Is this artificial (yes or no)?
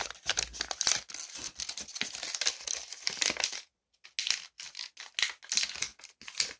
no